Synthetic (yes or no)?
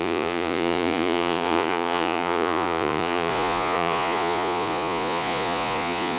yes